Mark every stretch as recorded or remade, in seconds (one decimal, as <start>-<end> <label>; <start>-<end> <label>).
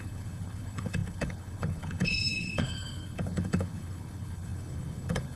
0.0-5.4 remade